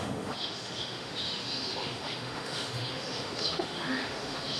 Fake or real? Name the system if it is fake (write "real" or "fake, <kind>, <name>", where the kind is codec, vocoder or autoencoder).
fake, autoencoder, DAC-VAE